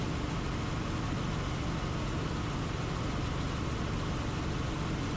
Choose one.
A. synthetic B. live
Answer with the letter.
B